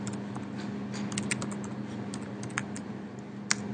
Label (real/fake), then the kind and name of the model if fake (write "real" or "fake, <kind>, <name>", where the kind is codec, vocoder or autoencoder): real